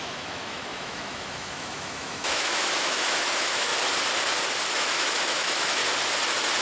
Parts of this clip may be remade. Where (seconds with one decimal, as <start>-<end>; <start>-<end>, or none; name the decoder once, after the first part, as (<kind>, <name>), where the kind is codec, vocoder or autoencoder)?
0.0-3.7 (autoencoder, DAC-VAE); 4.7-5.8